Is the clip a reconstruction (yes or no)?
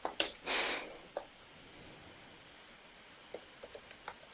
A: no